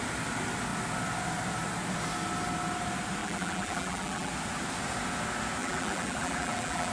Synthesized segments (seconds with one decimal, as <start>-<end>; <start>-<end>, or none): 3.2-4.3; 5.6-6.9